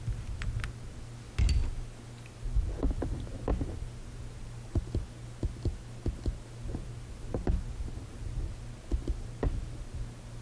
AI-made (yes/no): no